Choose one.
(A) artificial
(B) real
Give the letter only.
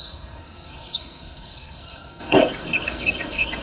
A